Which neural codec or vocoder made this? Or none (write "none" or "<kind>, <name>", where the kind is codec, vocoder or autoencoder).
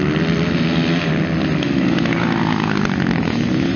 none